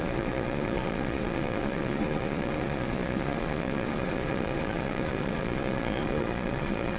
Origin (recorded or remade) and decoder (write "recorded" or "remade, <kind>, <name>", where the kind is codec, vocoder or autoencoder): remade, vocoder, Vocos